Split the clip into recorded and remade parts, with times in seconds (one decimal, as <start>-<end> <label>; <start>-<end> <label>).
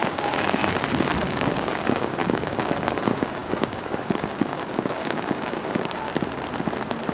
0.0-0.6 remade; 0.6-1.2 recorded; 1.2-6.1 remade; 6.1-7.1 recorded